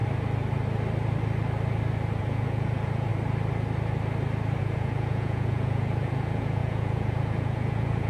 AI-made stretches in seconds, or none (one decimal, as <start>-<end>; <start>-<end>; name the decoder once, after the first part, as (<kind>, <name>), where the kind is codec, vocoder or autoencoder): 2.2-3.1 (vocoder, Vocos); 4.6-8.1